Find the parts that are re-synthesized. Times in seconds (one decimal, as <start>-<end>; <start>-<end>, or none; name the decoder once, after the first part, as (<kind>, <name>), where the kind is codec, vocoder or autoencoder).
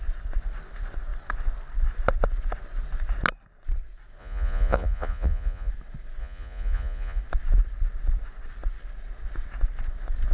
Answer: 4.2-5.7 (vocoder, Vocos); 6.2-7.2